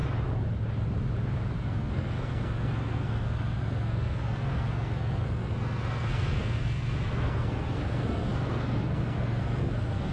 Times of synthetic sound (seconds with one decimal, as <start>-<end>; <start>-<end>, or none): 1.6-10.1